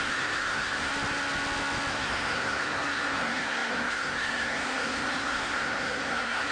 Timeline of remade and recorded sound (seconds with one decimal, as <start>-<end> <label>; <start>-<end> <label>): 0.0-0.9 remade; 0.9-1.9 recorded; 1.9-6.5 remade